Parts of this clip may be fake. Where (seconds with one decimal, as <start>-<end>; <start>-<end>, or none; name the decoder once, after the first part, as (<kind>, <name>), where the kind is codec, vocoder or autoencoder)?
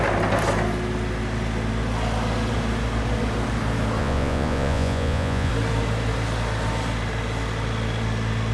4.0-5.5 (vocoder, Vocos)